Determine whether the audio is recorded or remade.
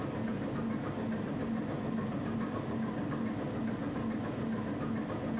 recorded